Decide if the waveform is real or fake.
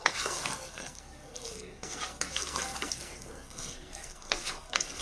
fake